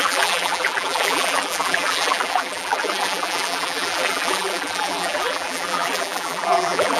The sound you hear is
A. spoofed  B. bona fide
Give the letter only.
A